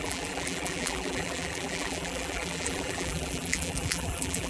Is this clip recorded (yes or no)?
no